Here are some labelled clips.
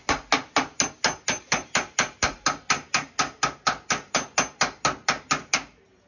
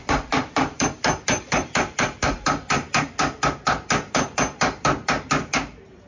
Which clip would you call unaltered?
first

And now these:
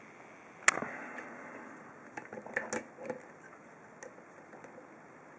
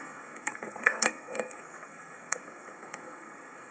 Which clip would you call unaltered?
first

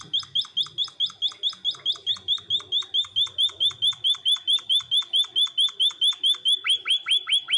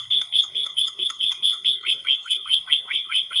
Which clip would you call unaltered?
first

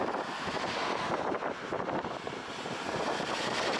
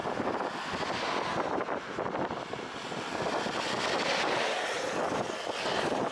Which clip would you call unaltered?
second